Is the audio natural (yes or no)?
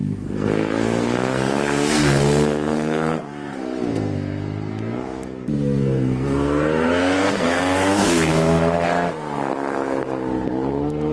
no